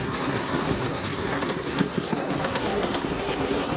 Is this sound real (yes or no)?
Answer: no